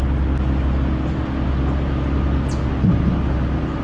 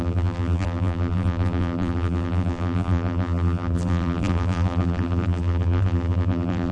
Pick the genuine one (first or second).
first